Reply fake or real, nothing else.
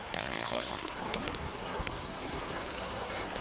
fake